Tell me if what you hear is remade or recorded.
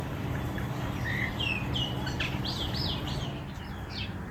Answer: remade